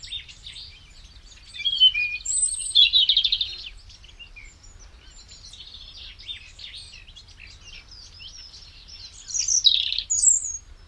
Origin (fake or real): real